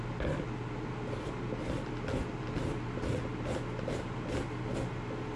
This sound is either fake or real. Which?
real